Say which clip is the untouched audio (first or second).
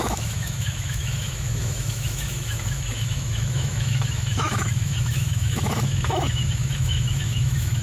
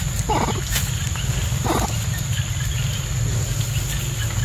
second